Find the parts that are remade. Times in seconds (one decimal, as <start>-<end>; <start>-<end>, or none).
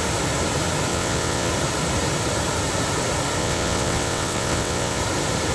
0.9-1.5; 3.4-5.0